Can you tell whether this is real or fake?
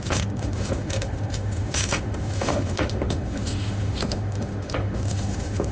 fake